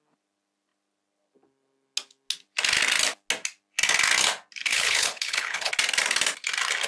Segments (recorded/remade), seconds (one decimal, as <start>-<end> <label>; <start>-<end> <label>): 0.0-4.7 recorded; 4.7-5.7 remade; 5.7-6.9 recorded

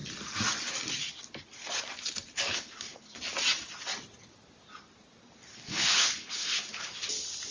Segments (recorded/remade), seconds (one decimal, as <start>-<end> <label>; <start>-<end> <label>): 0.0-2.5 recorded; 2.5-3.2 remade; 3.2-5.5 recorded; 5.5-6.9 remade; 6.9-7.5 recorded

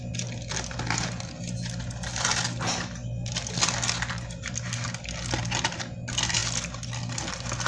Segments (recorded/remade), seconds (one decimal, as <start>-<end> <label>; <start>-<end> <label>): 0.0-7.7 recorded

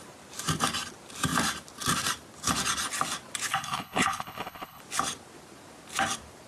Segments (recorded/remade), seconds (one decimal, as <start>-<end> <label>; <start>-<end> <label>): 0.0-3.5 recorded; 3.5-4.8 remade; 4.8-6.5 recorded

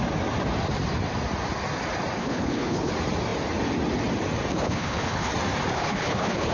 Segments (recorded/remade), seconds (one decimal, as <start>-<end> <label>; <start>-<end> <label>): 0.0-2.2 recorded; 2.2-2.9 remade; 2.9-4.5 recorded; 4.5-5.3 remade; 5.3-5.7 recorded; 5.7-6.5 remade

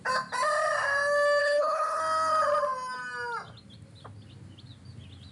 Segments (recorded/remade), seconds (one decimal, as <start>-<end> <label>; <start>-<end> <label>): 0.0-1.4 recorded; 1.4-2.0 remade; 2.0-5.3 recorded

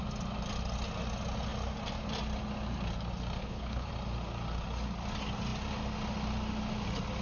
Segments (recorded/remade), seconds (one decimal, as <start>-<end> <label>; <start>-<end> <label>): 0.0-3.4 recorded; 3.4-3.9 remade; 3.9-7.2 recorded

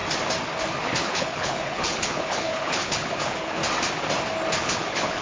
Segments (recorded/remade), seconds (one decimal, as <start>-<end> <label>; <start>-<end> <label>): 0.0-0.8 recorded; 0.8-3.6 remade; 3.6-4.6 recorded; 4.6-5.2 remade